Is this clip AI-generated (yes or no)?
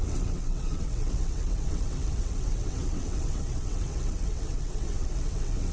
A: yes